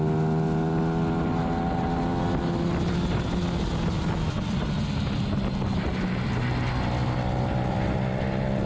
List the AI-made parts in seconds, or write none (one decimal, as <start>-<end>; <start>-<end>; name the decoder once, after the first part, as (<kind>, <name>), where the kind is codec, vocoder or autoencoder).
7.0-8.2 (vocoder, BigVGAN v2)

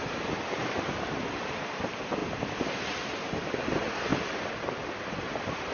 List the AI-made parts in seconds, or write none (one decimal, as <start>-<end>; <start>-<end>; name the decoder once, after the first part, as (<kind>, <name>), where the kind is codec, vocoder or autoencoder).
0.0-2.2 (vocoder, BigVGAN v2); 3.0-4.1; 4.6-5.7

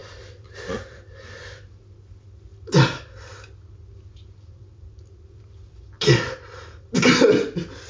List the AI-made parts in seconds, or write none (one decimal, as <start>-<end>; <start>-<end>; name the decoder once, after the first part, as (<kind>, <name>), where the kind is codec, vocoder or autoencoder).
0.0-1.8 (vocoder, BigVGAN v2)